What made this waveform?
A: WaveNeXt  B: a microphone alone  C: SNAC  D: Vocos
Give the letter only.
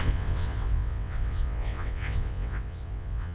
A